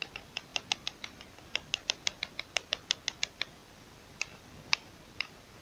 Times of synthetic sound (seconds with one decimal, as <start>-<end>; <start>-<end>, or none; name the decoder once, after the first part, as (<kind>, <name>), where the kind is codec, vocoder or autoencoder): 3.6-4.9 (vocoder, BigVGAN v2)